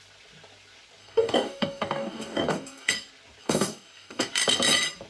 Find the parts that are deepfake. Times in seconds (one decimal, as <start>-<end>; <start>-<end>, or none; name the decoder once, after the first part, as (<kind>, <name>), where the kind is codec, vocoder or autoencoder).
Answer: 1.0-2.9 (codec, DAC); 3.4-4.3